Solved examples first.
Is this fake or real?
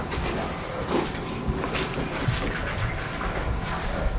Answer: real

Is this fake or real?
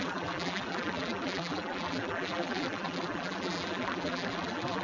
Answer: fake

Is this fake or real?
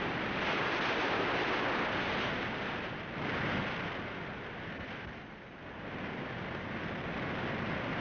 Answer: fake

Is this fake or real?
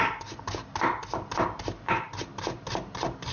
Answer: real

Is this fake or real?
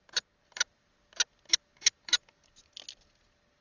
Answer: real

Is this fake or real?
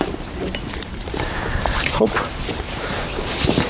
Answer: fake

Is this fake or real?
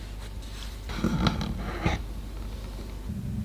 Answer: real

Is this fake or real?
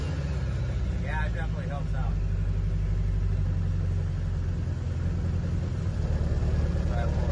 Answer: real